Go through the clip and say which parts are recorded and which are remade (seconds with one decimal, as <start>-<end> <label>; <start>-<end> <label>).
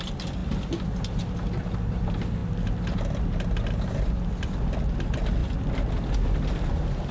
0.0-7.1 recorded